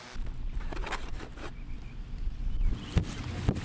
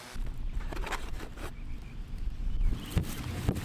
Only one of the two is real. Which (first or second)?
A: first